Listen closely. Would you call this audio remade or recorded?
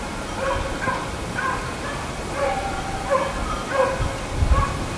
recorded